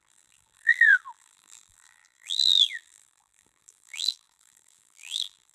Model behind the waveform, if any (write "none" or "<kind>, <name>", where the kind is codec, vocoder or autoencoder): vocoder, BigVGAN v2